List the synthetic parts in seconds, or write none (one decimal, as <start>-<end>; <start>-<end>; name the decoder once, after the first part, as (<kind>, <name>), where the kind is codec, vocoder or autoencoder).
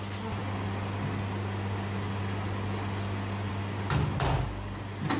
none